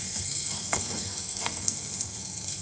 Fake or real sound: fake